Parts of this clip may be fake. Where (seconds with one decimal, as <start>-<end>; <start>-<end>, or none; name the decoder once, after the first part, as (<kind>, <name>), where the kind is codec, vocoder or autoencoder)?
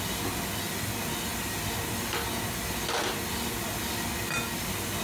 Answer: none